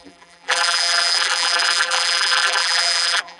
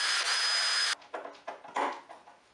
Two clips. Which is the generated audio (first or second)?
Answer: first